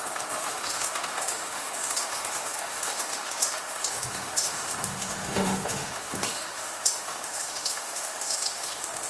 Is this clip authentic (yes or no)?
no